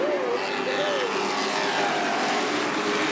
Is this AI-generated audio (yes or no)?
no